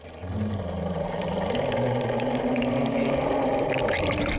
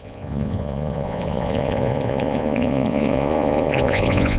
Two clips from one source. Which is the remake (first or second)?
second